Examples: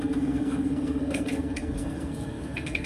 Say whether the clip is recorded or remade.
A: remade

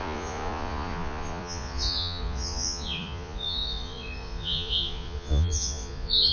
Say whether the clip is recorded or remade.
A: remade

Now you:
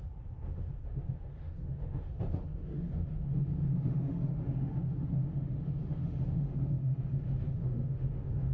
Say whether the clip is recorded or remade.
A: remade